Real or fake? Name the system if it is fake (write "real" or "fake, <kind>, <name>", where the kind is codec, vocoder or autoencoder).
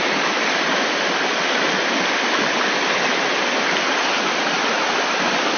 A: real